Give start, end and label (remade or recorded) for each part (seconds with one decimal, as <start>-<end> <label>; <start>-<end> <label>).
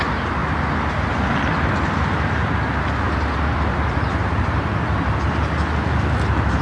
0.0-6.6 recorded